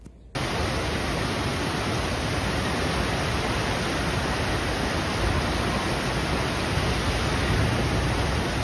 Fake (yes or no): no